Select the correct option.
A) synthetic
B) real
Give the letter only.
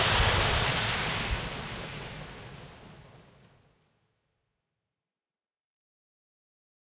B